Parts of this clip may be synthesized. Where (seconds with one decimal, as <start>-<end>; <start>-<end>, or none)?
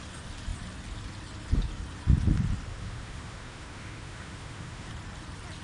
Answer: 2.7-4.9